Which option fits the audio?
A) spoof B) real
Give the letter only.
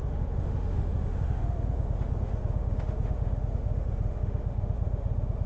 A